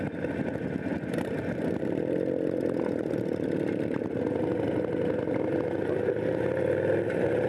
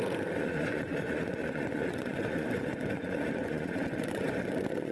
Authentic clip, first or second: first